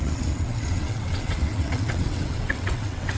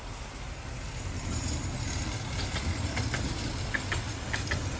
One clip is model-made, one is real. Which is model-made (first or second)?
first